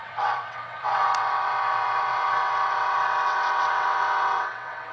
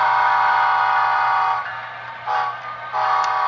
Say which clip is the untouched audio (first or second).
second